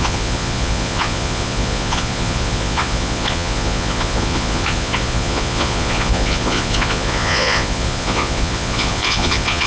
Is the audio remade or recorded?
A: remade